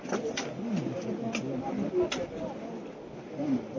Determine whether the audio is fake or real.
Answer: real